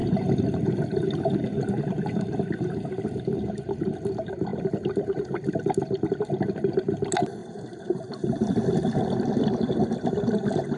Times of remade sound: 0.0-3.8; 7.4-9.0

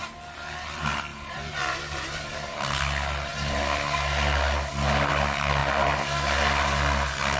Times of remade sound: 1.1-2.8

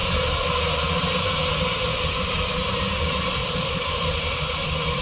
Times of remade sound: 3.4-5.0